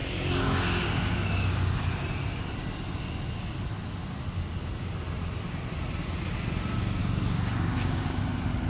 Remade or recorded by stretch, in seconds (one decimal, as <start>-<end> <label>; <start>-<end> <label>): 0.0-1.8 remade; 1.8-7.0 recorded; 7.0-8.2 remade; 8.2-8.7 recorded